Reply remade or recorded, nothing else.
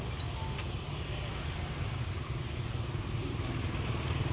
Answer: recorded